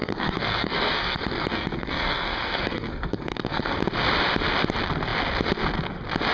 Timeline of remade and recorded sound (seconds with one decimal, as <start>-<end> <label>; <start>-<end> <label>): 0.0-3.8 remade; 3.8-6.3 recorded